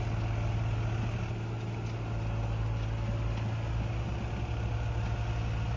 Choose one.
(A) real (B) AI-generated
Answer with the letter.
A